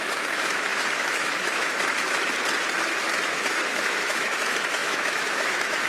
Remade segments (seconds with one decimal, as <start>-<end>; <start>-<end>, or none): 0.0-2.2; 2.7-5.9